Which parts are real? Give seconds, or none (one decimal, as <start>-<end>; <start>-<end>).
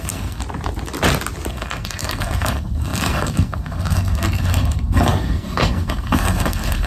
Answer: 0.4-1.5